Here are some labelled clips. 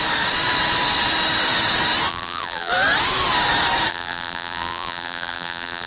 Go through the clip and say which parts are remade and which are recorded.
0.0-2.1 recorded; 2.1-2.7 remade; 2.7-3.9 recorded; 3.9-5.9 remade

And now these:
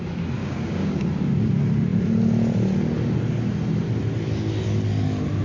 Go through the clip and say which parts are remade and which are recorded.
0.0-0.4 recorded; 0.4-1.1 remade; 1.1-5.4 recorded

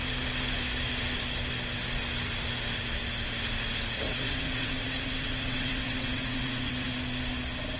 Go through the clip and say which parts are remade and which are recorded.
0.0-4.1 recorded; 4.1-6.7 remade; 6.7-7.8 recorded

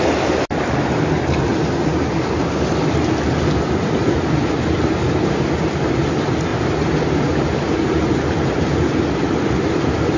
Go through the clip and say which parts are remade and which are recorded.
0.0-10.2 recorded

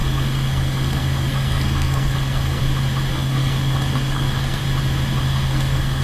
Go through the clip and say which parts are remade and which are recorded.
0.0-2.6 remade; 2.6-3.1 recorded; 3.1-4.6 remade; 4.6-5.2 recorded; 5.2-6.0 remade